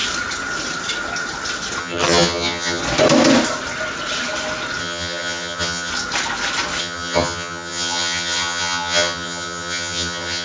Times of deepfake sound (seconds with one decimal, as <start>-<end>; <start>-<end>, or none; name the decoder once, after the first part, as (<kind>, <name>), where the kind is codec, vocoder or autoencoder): 1.8-2.8 (vocoder, HiFi-GAN); 4.8-5.9; 6.8-10.4